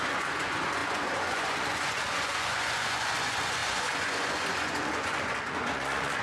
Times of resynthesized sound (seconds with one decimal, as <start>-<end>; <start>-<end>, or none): 0.0-6.2